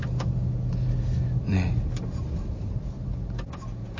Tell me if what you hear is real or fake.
real